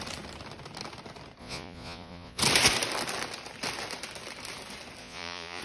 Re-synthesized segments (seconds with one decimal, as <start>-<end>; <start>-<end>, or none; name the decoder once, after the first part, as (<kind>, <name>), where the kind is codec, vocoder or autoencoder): 1.4-2.4 (vocoder, Vocos); 5.0-5.6